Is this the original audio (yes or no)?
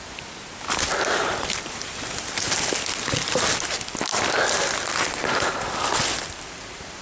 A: yes